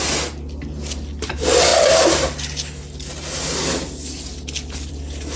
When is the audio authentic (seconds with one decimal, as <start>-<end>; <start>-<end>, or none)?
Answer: 0.0-5.4